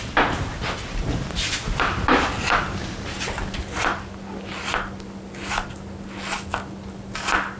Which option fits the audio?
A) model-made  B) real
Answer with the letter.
B